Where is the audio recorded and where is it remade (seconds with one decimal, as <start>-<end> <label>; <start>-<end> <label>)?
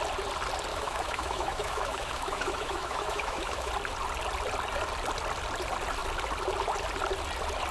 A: 0.0-0.7 recorded; 0.7-3.7 remade; 3.7-7.7 recorded